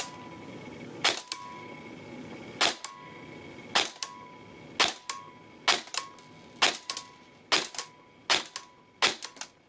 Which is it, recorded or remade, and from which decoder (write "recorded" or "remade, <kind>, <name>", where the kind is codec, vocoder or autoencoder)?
recorded